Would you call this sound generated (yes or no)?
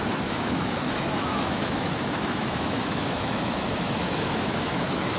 yes